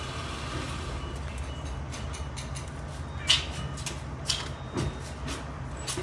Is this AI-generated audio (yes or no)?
no